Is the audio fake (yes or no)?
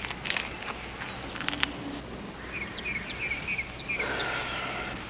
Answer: no